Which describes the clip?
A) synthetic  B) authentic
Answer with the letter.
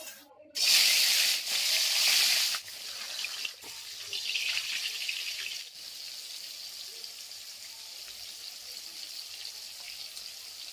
B